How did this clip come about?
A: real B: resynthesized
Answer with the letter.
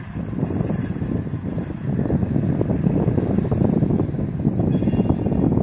A